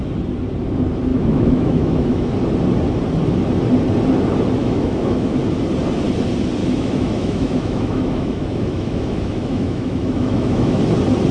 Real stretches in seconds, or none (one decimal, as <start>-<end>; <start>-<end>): 0.0-1.1; 2.3-4.6; 5.4-6.6; 10.8-11.3